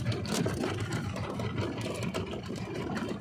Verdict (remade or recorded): recorded